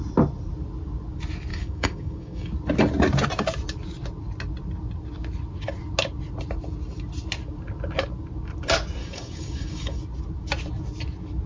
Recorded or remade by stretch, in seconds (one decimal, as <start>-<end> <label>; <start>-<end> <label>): 0.0-1.5 recorded; 1.5-2.5 remade; 2.5-9.0 recorded; 9.0-10.0 remade; 10.0-11.5 recorded